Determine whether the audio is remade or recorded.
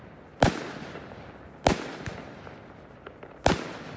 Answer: recorded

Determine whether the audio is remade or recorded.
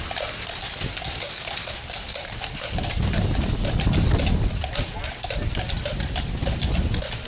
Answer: recorded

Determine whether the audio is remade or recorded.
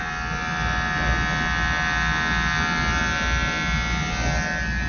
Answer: recorded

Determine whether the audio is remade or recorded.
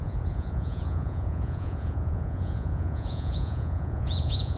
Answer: remade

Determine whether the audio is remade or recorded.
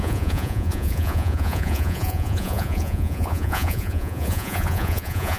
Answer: remade